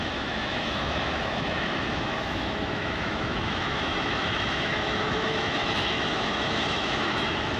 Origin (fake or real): fake